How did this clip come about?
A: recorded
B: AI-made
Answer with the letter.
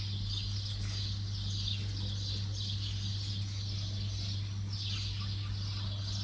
A